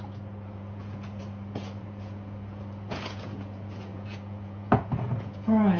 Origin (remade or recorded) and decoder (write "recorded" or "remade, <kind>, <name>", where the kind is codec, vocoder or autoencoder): remade, vocoder, Vocos